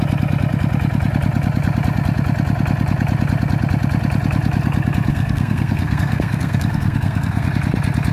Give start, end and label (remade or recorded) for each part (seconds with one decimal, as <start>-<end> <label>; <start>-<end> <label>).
0.0-5.1 recorded; 5.1-7.5 remade; 7.5-8.1 recorded